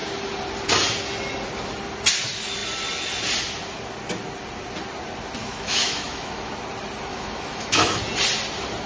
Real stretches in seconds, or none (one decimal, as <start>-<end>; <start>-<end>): 0.0-5.4; 6.5-7.1; 8.0-8.9